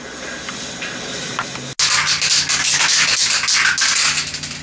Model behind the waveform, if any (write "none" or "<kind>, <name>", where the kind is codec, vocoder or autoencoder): none